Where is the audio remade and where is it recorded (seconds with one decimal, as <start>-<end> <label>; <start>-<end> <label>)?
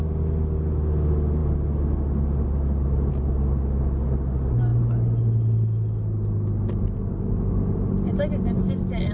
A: 0.0-9.1 recorded